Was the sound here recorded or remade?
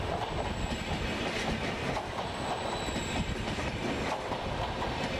recorded